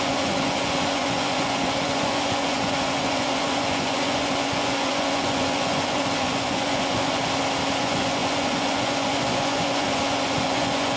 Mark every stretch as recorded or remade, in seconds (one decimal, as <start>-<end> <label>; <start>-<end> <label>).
0.0-7.2 remade; 7.2-7.8 recorded; 7.8-11.0 remade